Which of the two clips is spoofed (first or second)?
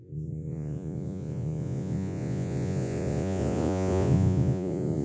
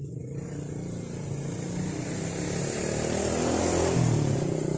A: first